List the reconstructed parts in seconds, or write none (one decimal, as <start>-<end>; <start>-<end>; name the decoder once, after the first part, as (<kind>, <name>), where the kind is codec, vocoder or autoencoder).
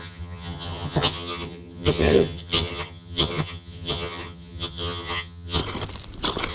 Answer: 0.0-5.6 (vocoder, HiFi-GAN)